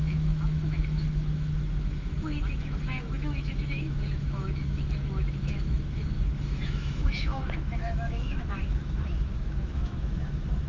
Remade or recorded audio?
remade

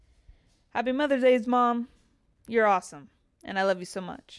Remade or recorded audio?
recorded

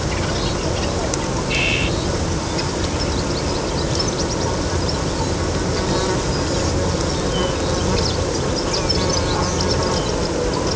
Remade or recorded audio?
recorded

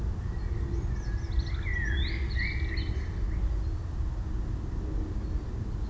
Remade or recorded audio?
recorded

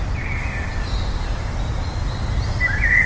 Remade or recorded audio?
recorded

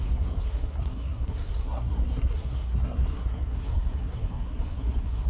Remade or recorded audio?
remade